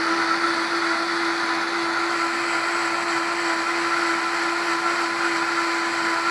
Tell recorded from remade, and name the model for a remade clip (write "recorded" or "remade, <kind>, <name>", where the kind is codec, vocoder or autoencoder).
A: recorded